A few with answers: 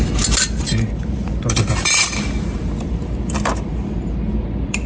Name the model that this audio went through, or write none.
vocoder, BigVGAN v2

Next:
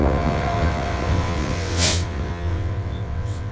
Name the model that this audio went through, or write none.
vocoder, WaveNeXt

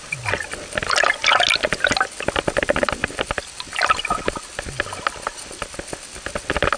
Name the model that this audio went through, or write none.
none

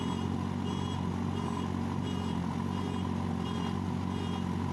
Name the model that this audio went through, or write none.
none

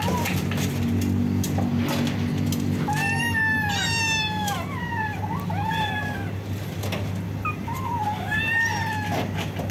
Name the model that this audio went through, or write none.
none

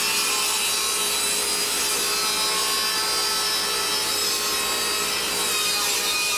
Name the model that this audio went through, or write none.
none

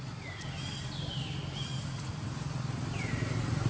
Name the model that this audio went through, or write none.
none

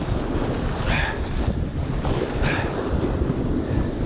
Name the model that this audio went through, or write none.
none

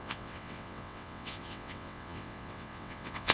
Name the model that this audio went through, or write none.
vocoder, WaveNeXt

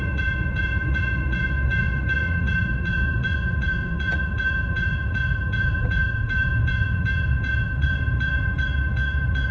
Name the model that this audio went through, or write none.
vocoder, Vocos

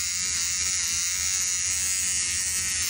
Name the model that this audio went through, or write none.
none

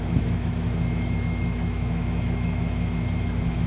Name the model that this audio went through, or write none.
autoencoder, DAC-VAE